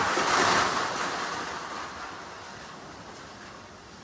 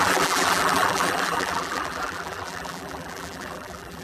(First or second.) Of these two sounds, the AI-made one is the second